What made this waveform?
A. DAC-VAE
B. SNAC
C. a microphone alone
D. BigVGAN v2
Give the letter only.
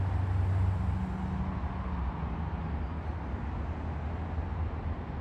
C